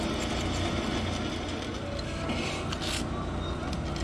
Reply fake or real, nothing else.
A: real